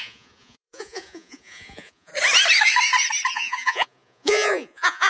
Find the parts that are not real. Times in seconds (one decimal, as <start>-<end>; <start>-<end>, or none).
0.0-2.1; 3.3-5.1